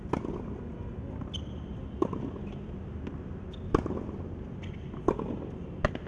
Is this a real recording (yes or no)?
yes